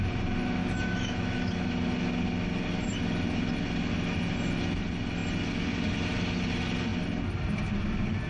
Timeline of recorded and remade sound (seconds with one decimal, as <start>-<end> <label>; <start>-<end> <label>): 0.0-0.6 recorded; 0.6-1.5 remade; 1.5-8.3 recorded